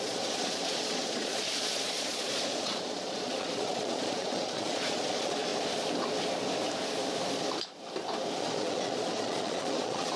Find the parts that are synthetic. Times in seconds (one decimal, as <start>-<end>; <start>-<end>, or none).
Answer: 0.0-5.5; 8.4-10.2